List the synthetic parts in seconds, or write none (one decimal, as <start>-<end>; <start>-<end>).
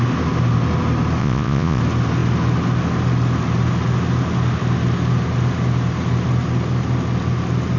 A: 1.2-1.8